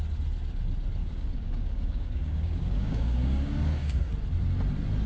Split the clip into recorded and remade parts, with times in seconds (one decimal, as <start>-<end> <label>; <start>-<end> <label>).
0.0-1.0 recorded; 1.0-4.1 remade; 4.1-5.1 recorded